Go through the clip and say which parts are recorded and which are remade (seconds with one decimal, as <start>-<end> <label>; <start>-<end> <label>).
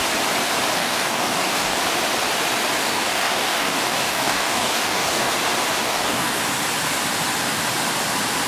0.0-0.8 recorded; 0.8-1.8 remade; 1.8-2.8 recorded; 2.8-5.3 remade; 5.3-5.8 recorded; 5.8-6.4 remade; 6.4-8.5 recorded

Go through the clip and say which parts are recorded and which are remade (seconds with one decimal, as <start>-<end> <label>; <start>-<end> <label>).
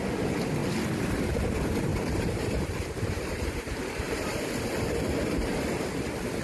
0.0-1.9 recorded; 1.9-4.5 remade; 4.5-6.4 recorded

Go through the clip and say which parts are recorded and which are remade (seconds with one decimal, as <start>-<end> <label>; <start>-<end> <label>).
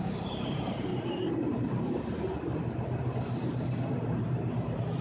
0.0-0.9 remade; 0.9-3.9 recorded; 3.9-5.0 remade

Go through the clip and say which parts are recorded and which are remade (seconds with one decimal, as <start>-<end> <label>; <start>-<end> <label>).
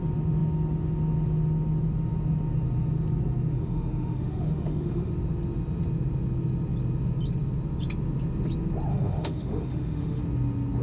0.0-3.5 recorded; 3.5-5.1 remade; 5.1-8.9 recorded; 8.9-10.2 remade; 10.2-10.8 recorded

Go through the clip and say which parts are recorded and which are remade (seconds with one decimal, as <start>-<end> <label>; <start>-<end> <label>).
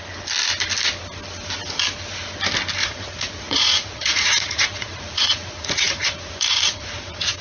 0.0-2.8 recorded; 2.8-7.4 remade